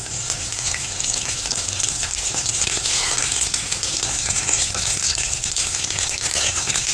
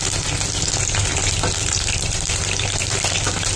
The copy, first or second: first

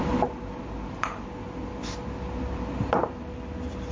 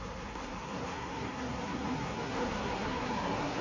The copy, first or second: second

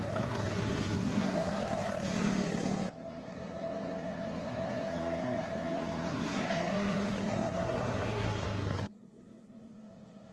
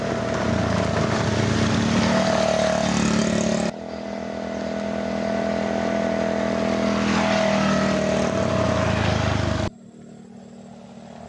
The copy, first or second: first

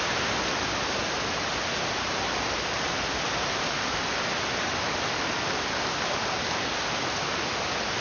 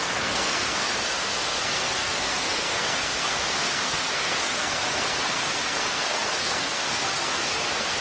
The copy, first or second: second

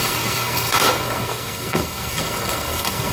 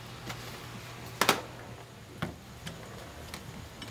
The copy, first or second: first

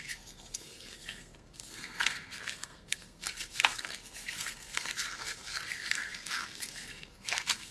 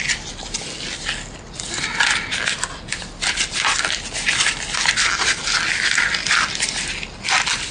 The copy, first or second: first